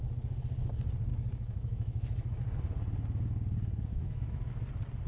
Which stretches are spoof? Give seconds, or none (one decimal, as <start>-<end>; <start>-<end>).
1.1-2.4; 3.9-4.5